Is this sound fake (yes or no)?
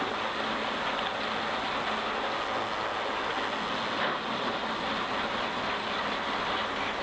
no